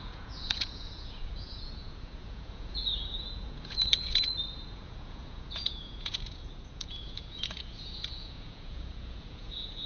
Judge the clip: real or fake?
fake